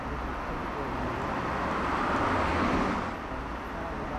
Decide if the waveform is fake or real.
real